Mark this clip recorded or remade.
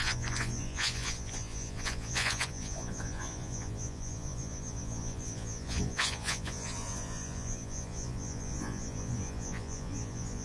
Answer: remade